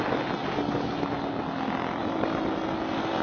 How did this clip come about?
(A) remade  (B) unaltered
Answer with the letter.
B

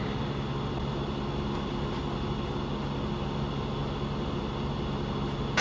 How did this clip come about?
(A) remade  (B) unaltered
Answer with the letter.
B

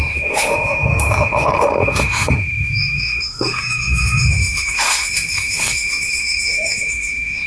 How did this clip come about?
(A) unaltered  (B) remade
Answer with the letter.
B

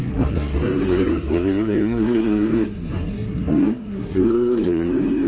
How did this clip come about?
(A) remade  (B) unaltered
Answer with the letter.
A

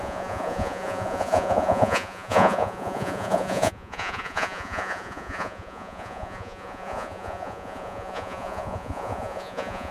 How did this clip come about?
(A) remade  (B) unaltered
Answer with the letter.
A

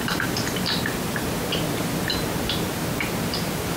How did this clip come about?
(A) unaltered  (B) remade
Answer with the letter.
A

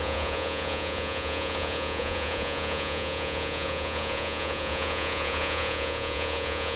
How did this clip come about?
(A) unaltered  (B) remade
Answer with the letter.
B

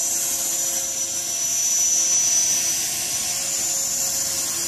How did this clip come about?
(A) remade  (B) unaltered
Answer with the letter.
B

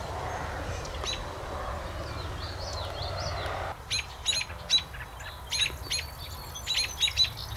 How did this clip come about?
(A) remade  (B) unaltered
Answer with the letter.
B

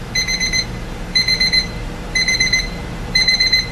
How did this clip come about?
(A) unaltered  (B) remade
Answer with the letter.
B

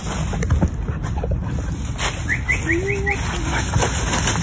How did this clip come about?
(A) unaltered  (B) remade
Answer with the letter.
A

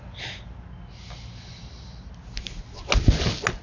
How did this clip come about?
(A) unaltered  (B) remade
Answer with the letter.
A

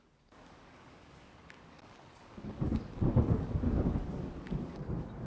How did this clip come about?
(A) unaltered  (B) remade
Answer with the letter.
B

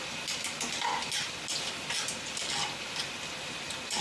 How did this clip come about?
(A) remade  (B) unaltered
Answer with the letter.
B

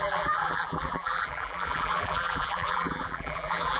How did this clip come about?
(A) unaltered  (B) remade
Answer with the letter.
B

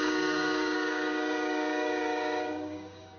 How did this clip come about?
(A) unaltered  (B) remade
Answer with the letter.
B